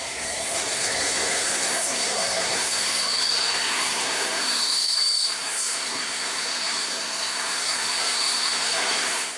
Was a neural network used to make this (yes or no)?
yes